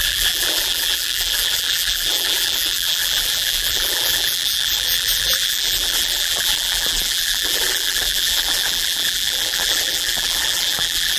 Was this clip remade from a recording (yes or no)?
yes